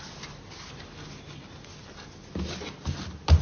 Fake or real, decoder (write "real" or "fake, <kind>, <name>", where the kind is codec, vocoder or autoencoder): real